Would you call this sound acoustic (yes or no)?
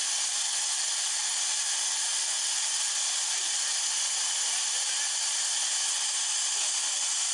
yes